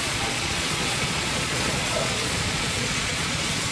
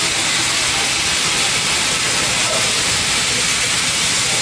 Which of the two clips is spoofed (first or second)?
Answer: first